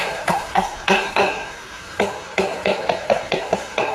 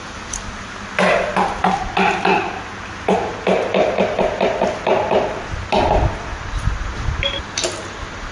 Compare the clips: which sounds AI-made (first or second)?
first